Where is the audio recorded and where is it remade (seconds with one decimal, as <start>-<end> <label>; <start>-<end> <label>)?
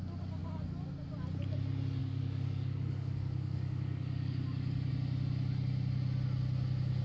0.0-2.0 recorded; 2.0-4.9 remade; 4.9-7.0 recorded